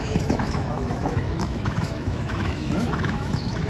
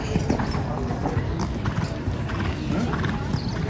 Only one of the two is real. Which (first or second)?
second